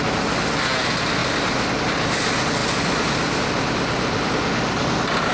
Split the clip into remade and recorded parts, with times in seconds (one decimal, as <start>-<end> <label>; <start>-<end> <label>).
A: 0.0-2.6 recorded; 2.6-4.3 remade; 4.3-5.3 recorded